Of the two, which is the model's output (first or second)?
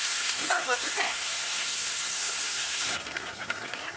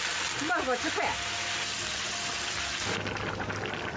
first